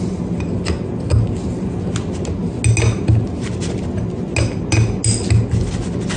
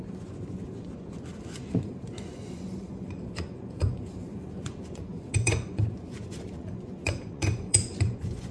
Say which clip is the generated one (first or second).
second